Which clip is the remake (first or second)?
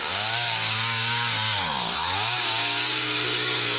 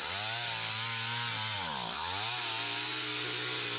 first